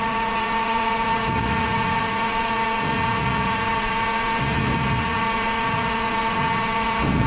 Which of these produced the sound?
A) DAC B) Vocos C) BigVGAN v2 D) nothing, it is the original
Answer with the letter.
B